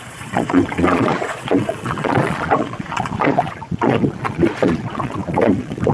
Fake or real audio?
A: fake